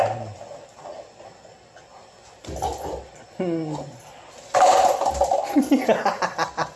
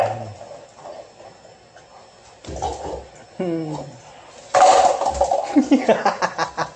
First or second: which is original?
second